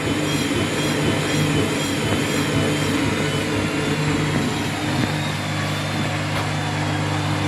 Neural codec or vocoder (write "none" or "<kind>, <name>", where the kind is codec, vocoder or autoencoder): none